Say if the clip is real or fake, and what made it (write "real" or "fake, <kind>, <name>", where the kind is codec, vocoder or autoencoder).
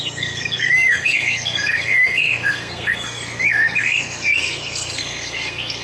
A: fake, codec, SNAC